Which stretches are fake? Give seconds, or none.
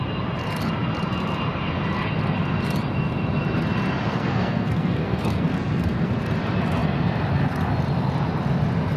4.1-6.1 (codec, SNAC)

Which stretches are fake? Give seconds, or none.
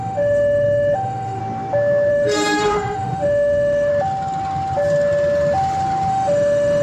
0.0-1.4 (autoencoder, DAC-VAE); 2.1-3.9; 6.1-6.8